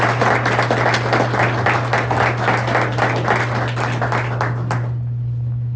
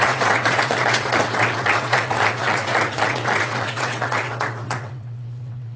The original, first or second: first